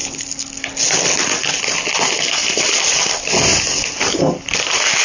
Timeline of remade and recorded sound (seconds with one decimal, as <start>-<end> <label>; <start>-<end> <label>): 0.0-5.0 recorded